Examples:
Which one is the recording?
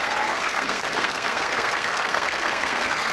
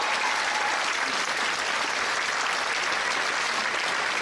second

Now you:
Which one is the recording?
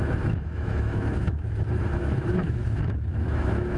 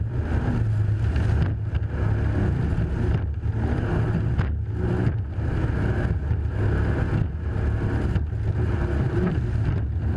second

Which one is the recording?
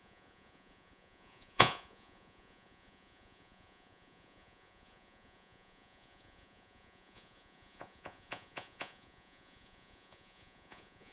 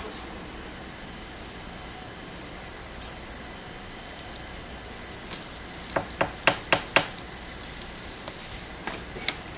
second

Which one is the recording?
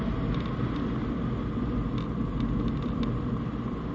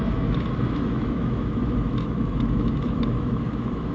first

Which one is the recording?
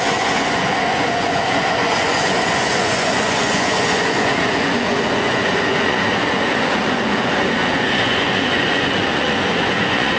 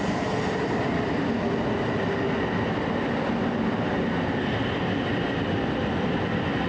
second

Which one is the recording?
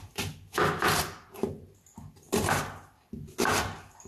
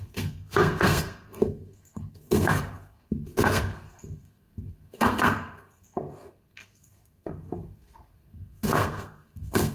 first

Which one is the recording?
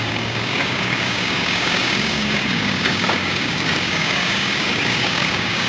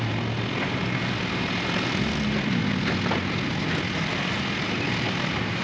second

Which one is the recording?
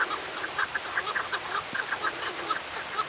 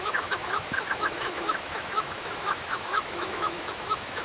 first